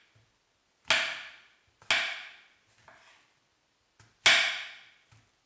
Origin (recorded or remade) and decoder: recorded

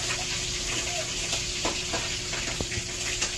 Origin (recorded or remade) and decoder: recorded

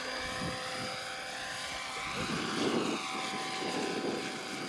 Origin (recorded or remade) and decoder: recorded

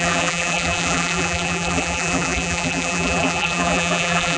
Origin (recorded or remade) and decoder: remade, vocoder, BigVGAN v2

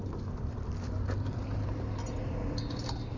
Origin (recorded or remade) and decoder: remade, vocoder, BigVGAN v2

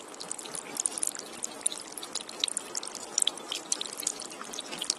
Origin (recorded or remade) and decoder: recorded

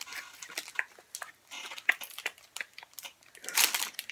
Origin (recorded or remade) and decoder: recorded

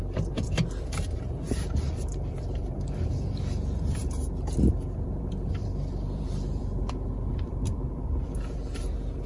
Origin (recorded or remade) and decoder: remade, vocoder, BigVGAN v2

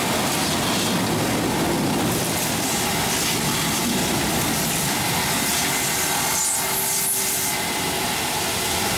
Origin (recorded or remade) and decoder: recorded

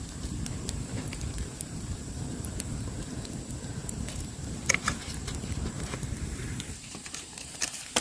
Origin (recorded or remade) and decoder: remade, vocoder, BigVGAN v2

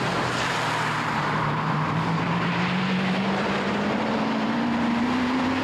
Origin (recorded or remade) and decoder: remade, vocoder, BigVGAN v2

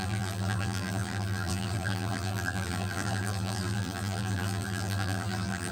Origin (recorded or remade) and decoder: remade, vocoder, BigVGAN v2